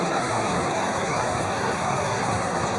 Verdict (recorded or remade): remade